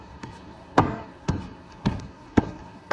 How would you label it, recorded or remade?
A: remade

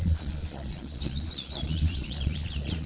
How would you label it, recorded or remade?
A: remade